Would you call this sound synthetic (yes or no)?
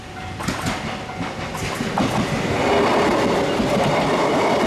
no